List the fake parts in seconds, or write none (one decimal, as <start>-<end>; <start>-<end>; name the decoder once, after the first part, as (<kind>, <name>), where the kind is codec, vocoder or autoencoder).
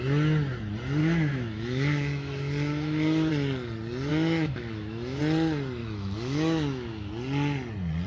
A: 1.0-3.3 (autoencoder, DAC-VAE); 4.1-5.2; 5.8-7.1